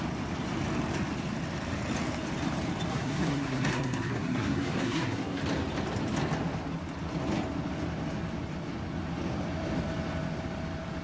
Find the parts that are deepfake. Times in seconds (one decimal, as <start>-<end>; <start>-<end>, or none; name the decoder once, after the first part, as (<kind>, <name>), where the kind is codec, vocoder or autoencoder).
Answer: 2.9-5.4 (codec, SNAC)